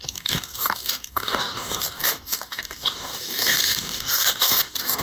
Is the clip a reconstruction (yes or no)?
yes